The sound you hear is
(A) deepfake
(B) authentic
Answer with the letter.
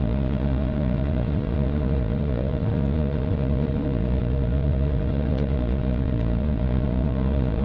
A